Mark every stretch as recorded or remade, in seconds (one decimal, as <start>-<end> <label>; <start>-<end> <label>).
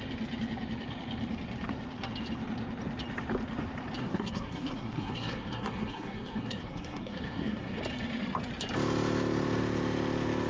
0.0-4.0 recorded; 4.0-7.8 remade; 7.8-10.5 recorded